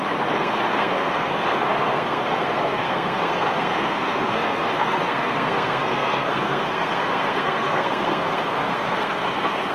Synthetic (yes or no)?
yes